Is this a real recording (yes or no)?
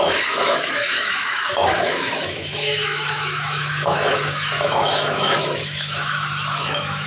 no